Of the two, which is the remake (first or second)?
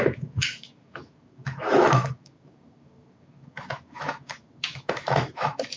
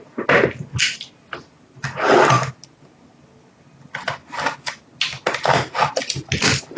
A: first